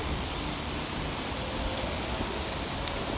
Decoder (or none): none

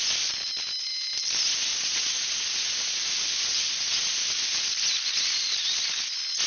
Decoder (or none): none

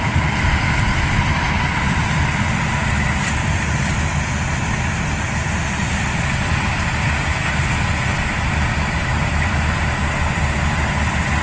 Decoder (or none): none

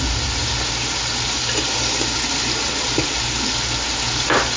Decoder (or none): none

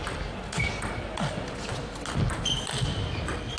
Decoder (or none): none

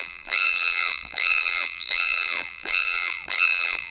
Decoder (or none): vocoder, BigVGAN v2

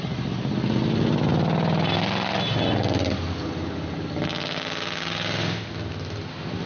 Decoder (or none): none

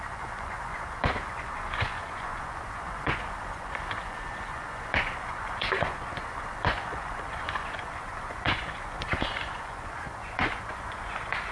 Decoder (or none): vocoder, Vocos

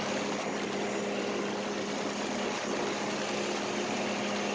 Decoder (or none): none